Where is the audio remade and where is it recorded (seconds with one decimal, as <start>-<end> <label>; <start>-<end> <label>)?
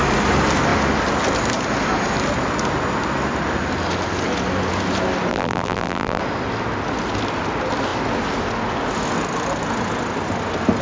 0.0-5.3 recorded; 5.3-6.2 remade; 6.2-10.8 recorded